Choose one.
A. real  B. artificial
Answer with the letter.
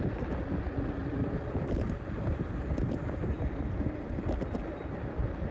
B